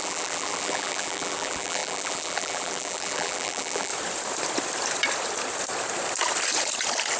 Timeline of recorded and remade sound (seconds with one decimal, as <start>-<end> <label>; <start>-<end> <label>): 0.0-3.9 remade; 3.9-7.2 recorded